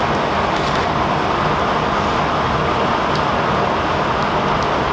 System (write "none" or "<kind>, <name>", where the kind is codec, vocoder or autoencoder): none